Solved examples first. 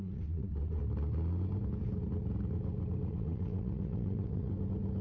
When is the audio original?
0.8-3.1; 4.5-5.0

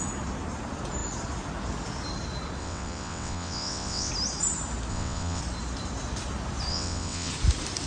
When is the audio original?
0.0-2.6; 4.1-4.9; 5.4-6.7; 7.3-7.9

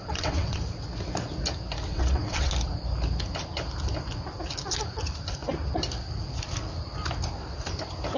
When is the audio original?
0.6-1.9; 2.5-8.2

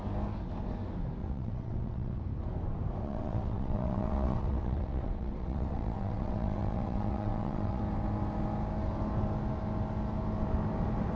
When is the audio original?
0.0-1.2; 2.2-3.0; 7.8-11.2

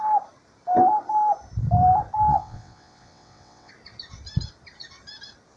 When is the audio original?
0.0-2.3; 3.7-5.6

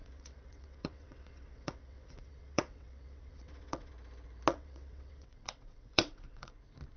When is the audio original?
3.9-4.5; 6.5-7.0

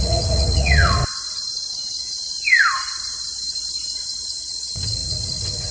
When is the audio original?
1.0-4.4

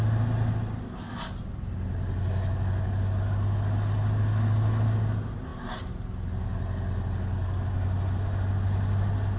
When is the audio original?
0.0-9.4